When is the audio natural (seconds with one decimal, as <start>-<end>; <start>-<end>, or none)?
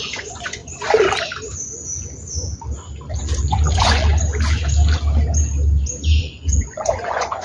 0.6-3.1; 4.1-6.2